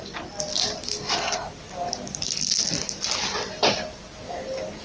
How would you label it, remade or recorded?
recorded